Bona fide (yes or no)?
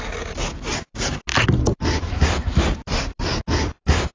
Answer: yes